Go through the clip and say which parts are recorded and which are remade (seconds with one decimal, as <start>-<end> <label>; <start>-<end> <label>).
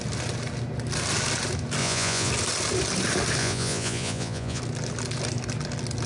0.0-1.8 recorded; 1.8-2.3 remade; 2.3-3.4 recorded; 3.4-4.6 remade; 4.6-6.1 recorded